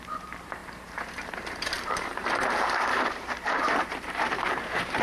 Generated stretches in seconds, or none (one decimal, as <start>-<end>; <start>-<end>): 0.0-5.0